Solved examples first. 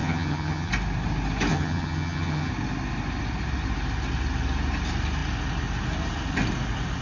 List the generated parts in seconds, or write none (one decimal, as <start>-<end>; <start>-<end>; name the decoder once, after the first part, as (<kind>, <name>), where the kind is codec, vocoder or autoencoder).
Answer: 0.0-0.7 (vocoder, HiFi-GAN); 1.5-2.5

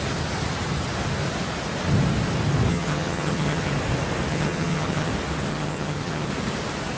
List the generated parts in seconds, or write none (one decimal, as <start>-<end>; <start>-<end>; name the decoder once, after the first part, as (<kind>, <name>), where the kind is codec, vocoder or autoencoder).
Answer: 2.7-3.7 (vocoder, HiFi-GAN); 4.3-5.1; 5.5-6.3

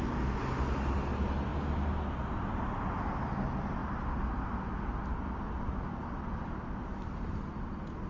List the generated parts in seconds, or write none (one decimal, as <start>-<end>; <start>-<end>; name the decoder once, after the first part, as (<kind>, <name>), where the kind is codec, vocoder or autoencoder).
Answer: none